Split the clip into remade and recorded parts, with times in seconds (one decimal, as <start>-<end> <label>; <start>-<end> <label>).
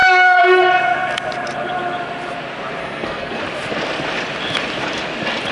0.0-0.6 remade; 0.6-2.8 recorded; 2.8-3.4 remade; 3.4-5.5 recorded